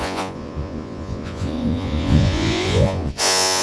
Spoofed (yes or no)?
yes